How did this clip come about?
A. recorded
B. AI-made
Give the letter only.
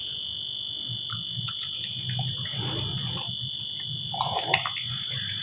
A